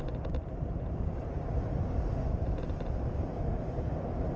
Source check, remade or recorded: recorded